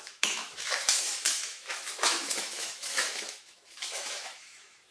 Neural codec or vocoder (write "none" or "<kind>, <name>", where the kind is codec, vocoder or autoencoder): autoencoder, DAC-VAE